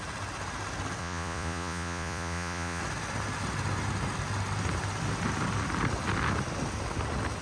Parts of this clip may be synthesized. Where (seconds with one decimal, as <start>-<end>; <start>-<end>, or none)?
1.0-2.8